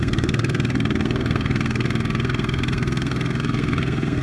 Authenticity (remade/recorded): remade